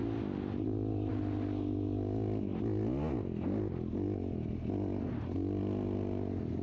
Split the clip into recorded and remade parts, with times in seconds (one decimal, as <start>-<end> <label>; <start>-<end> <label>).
0.0-6.6 recorded